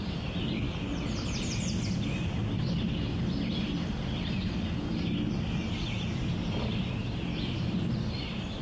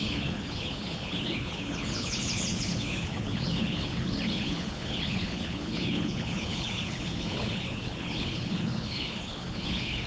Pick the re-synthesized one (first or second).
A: second